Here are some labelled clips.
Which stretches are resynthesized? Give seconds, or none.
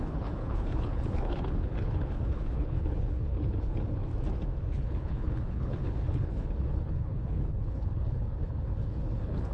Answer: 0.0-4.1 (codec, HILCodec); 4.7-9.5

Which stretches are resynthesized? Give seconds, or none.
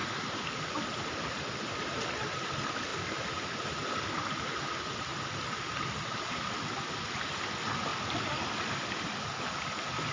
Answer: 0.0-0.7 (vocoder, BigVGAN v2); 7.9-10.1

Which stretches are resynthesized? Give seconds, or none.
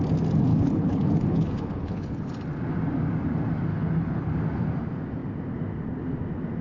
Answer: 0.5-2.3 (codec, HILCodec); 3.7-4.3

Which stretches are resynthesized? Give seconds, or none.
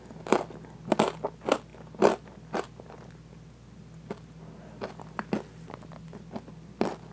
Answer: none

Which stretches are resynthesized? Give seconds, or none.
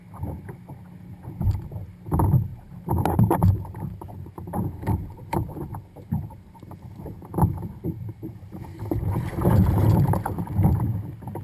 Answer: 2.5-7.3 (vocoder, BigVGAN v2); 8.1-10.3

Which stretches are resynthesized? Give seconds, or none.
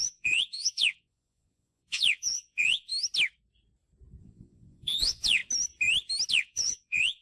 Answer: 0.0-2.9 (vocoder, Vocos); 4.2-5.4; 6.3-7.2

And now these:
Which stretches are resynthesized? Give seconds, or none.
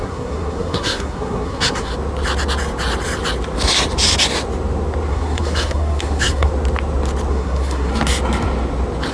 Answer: 0.0-1.9 (codec, SNAC); 5.1-6.5; 7.3-7.9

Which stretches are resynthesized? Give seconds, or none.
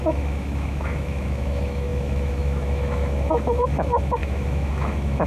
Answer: 0.0-5.3 (autoencoder, DAC-VAE)